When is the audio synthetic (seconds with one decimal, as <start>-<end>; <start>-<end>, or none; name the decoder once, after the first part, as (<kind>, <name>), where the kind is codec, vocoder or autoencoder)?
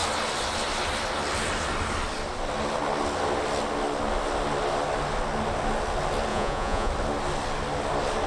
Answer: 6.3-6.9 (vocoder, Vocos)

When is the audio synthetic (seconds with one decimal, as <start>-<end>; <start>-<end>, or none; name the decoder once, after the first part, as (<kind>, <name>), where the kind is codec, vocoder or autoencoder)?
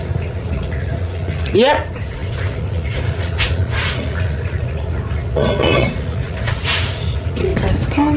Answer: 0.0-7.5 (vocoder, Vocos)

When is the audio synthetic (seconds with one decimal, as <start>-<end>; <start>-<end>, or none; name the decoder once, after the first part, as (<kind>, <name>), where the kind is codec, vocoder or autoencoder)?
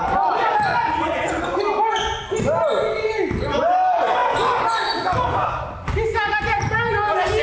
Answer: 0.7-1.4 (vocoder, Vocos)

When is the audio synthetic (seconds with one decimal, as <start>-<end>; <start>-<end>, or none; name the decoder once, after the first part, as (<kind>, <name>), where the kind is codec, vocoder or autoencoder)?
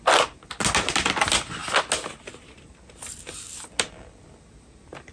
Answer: none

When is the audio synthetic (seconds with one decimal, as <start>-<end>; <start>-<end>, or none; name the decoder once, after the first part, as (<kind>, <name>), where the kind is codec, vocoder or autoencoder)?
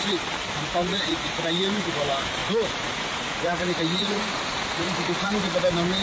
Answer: 0.8-1.6 (vocoder, Vocos); 2.4-5.3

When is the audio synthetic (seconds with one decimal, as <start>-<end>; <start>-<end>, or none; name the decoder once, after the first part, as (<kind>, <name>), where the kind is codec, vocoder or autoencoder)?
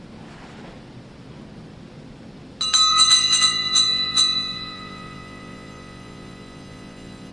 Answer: 2.9-7.3 (vocoder, Vocos)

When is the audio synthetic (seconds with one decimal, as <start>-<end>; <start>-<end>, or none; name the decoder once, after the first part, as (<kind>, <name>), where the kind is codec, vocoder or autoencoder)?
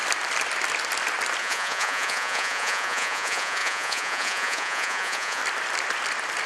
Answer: 1.4-5.4 (vocoder, Vocos)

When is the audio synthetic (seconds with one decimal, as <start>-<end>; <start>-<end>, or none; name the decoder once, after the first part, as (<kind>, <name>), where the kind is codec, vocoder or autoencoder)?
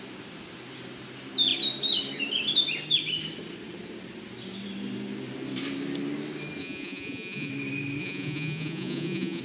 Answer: 6.6-7.5 (vocoder, Vocos); 8.0-9.4